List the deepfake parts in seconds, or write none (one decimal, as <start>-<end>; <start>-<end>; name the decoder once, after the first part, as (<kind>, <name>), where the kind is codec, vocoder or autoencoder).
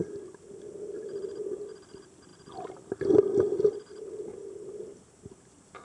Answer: none